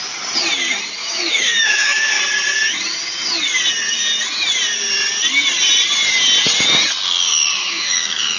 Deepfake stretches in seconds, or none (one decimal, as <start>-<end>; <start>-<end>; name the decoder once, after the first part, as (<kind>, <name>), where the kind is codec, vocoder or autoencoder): 1.0-2.2 (autoencoder, DAC-VAE); 7.6-8.4